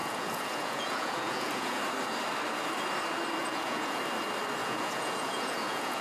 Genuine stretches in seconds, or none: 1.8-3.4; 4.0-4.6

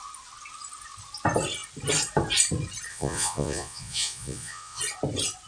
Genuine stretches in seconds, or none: 0.0-2.9; 4.8-5.5

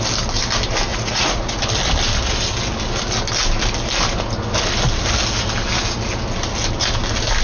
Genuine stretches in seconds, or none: 0.0-0.9; 1.6-7.4